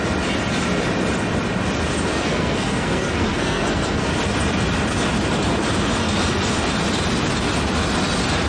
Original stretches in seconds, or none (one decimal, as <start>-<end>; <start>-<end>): 0.0-2.1; 4.1-8.5